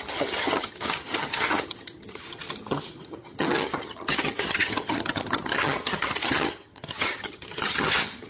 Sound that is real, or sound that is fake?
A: fake